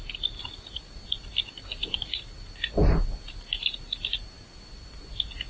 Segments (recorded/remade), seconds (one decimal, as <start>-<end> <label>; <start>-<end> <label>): 0.0-5.5 recorded